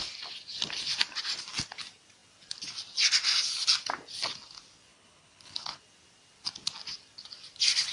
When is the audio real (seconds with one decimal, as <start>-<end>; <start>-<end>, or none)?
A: 0.0-4.9; 5.8-7.9

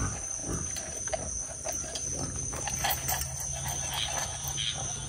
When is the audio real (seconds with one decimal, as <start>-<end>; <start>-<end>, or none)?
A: 0.0-0.4; 1.1-5.1

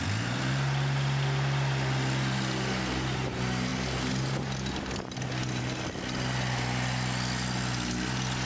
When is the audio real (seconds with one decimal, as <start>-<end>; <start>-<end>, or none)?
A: 0.0-8.5